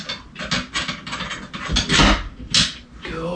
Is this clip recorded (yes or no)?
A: yes